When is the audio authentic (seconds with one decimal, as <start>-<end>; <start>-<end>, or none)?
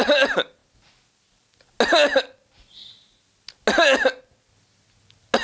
0.0-5.4